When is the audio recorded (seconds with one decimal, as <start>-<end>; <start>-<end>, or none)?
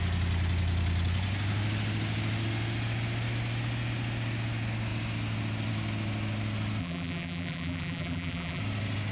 0.0-6.8; 8.6-9.1